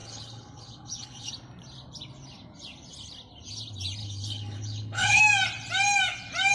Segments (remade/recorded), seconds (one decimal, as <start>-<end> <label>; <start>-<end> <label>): 0.0-1.3 remade; 1.3-4.0 recorded; 4.0-5.2 remade; 5.2-6.5 recorded